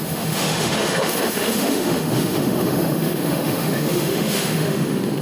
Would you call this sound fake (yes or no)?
yes